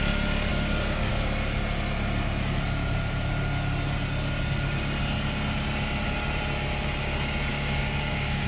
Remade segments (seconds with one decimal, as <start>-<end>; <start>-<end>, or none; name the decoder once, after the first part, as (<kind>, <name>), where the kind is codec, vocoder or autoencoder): 0.5-1.1 (codec, DAC); 7.5-8.5